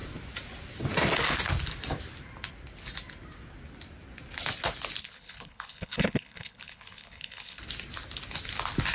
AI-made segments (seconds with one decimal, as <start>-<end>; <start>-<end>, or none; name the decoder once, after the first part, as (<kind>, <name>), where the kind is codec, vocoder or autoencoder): 5.0-7.6 (codec, HILCodec)